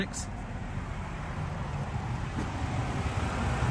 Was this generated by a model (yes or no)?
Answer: no